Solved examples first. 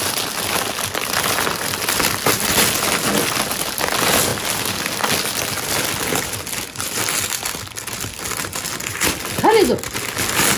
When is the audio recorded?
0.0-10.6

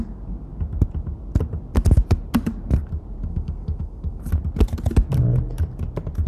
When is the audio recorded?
0.0-3.3; 4.2-6.3

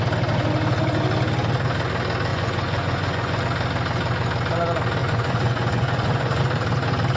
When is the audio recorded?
0.0-2.3; 3.4-5.0; 6.4-7.2

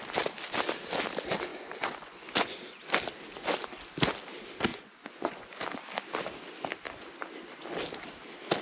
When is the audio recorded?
0.0-1.5; 2.8-4.7; 5.6-8.6